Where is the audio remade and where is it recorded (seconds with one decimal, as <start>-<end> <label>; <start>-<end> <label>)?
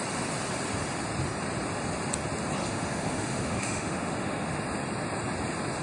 0.0-2.6 recorded; 2.6-4.6 remade; 4.6-5.8 recorded